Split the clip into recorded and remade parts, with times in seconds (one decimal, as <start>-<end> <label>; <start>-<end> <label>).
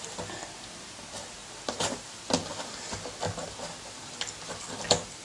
0.0-5.2 recorded